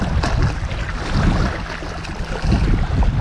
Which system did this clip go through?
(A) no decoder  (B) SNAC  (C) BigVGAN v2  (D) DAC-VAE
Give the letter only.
A